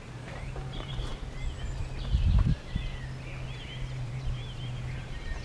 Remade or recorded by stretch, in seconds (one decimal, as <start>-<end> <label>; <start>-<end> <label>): 0.0-1.1 remade; 1.1-2.1 recorded; 2.1-2.8 remade; 2.8-4.0 recorded; 4.0-5.4 remade